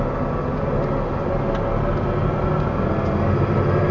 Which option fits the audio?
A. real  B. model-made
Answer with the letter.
A